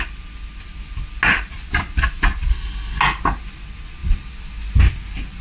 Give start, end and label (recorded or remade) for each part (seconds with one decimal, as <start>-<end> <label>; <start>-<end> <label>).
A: 0.0-2.5 recorded; 2.5-3.0 remade; 3.0-5.4 recorded